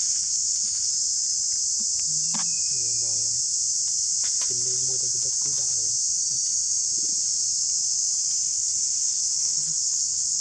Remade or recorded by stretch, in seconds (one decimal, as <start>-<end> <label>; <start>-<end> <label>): 0.0-0.9 remade; 0.9-8.4 recorded; 8.4-10.4 remade